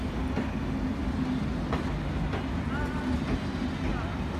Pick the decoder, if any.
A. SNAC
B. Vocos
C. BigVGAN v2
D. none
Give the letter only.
D